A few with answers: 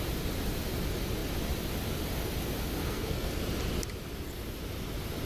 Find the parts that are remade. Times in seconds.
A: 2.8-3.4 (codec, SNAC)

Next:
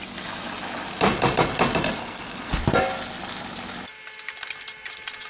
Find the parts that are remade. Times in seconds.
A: 2.0-2.5 (codec, SNAC)

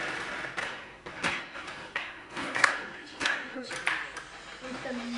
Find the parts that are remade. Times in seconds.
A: 0.6-3.7 (codec, SNAC)

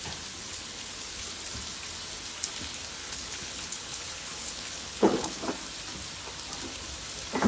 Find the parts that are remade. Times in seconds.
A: 0.5-1.3 (codec, HILCodec); 3.0-5.5

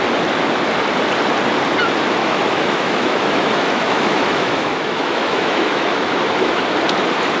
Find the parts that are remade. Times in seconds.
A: 2.2-6.6 (autoencoder, DAC-VAE)

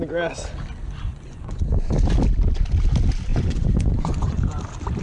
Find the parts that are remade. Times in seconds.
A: 1.1-1.9 (vocoder, Vocos); 3.3-4.6

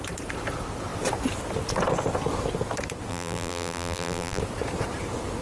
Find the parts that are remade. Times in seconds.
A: 3.1-4.4 (vocoder, BigVGAN v2)

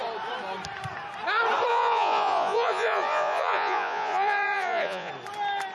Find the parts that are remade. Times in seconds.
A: 1.7-5.1 (vocoder, Vocos)